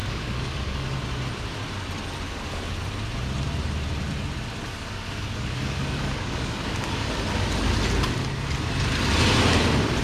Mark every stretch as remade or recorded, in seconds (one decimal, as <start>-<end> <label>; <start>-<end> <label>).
0.0-1.0 remade; 1.0-4.7 recorded; 4.7-7.1 remade; 7.1-10.0 recorded